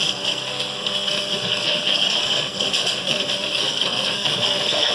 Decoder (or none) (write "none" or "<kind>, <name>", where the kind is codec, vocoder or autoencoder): codec, SNAC